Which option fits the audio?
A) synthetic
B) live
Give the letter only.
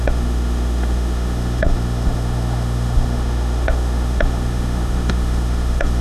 A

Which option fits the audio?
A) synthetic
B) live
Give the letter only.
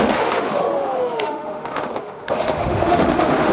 A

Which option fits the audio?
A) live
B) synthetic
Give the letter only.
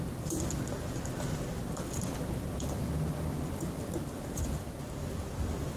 A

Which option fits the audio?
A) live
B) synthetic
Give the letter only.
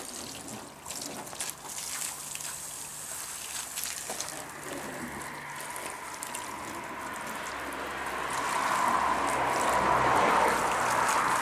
A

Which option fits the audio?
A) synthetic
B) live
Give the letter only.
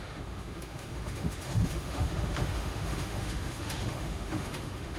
A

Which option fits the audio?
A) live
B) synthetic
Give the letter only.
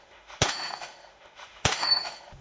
B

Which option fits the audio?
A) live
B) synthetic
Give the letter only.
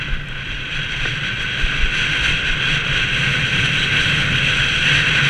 A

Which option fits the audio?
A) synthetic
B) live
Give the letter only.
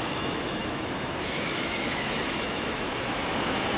A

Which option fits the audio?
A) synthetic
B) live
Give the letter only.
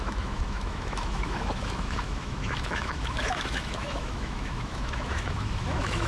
A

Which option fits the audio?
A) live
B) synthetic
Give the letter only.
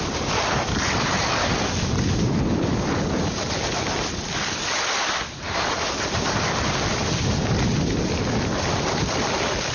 A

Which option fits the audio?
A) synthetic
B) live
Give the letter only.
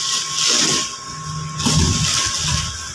B